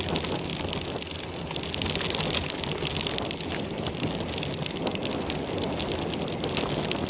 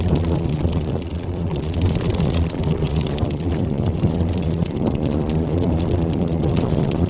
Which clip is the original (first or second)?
first